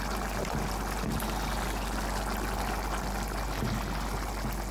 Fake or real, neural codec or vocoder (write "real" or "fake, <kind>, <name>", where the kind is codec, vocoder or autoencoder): real